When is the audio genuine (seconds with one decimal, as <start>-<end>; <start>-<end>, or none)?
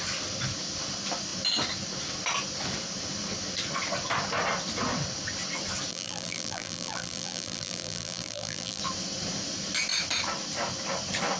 0.0-5.9; 8.8-11.4